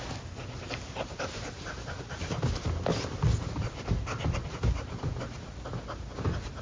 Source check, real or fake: real